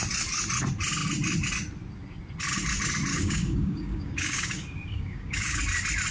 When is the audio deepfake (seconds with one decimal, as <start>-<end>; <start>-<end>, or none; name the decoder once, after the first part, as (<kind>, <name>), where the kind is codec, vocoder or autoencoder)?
3.1-5.6 (codec, DAC)